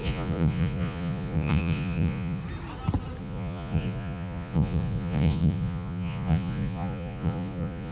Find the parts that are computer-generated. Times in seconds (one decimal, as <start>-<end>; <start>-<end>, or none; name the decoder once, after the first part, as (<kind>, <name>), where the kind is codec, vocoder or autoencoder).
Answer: 0.0-2.4 (vocoder, Vocos); 3.2-7.9